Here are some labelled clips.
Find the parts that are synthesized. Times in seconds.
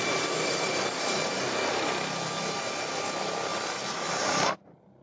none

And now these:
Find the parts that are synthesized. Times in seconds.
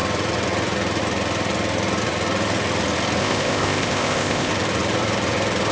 3.2-4.5 (codec, ZipCodec)